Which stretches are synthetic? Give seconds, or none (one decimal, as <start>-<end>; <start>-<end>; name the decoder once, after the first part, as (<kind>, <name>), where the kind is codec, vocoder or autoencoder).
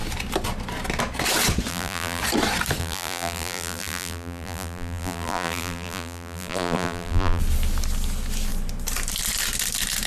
1.7-2.2 (vocoder, BigVGAN v2); 2.8-7.4